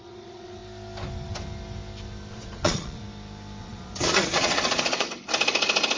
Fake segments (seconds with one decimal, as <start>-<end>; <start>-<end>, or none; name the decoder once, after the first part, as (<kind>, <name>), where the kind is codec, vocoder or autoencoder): 0.0-0.6 (vocoder, Vocos); 2.3-3.0; 3.6-5.1